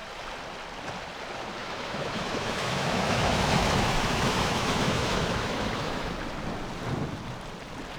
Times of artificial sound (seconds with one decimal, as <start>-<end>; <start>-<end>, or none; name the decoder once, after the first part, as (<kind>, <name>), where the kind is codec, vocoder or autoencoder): 1.6-6.1 (autoencoder, DAC-VAE)